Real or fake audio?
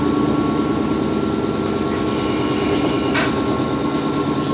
real